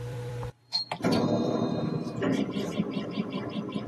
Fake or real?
fake